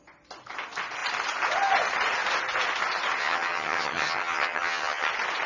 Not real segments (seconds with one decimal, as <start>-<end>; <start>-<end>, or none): 3.2-5.1